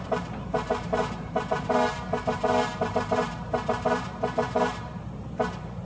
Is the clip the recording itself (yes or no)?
no